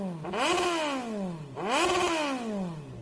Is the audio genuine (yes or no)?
yes